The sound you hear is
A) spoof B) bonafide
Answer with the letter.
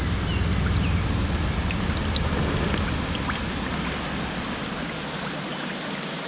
B